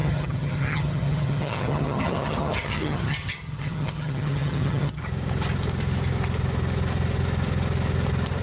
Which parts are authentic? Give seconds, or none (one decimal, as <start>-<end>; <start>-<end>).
5.0-8.4